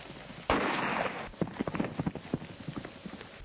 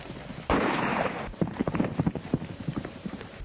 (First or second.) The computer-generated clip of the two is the second